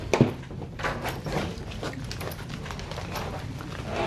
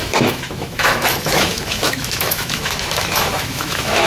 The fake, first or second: second